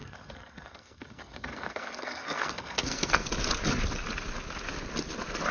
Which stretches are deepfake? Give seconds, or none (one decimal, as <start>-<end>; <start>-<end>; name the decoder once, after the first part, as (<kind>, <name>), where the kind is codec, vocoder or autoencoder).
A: 0.0-3.3 (codec, SNAC)